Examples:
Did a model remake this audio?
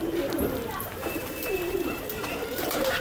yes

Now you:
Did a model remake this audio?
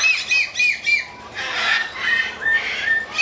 no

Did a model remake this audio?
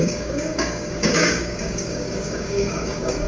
yes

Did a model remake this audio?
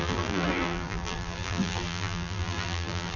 yes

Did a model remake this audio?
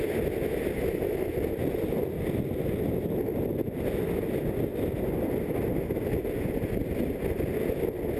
no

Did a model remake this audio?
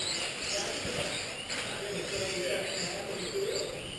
no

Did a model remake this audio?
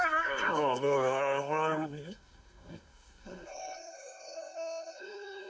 yes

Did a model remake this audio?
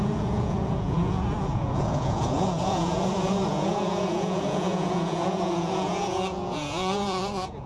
yes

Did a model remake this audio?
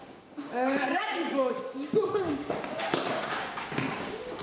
yes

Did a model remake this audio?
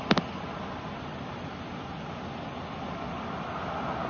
no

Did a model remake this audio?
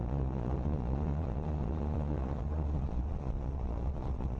yes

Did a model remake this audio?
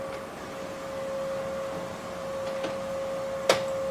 no